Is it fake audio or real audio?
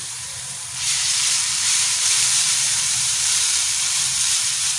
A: fake